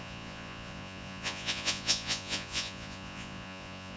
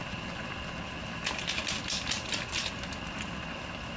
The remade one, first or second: first